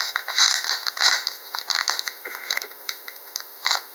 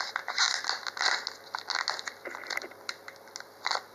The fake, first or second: first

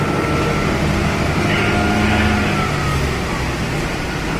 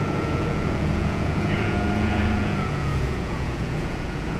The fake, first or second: second